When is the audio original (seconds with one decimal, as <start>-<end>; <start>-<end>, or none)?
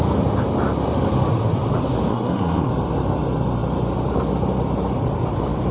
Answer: 0.0-2.1; 2.7-5.7